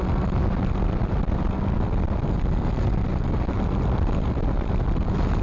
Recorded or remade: recorded